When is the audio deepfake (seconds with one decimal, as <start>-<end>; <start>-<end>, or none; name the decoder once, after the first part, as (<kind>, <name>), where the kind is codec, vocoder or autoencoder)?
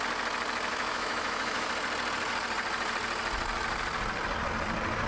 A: 0.7-1.7 (autoencoder, DAC-VAE)